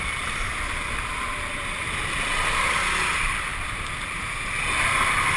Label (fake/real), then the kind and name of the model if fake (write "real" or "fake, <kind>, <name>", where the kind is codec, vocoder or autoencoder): real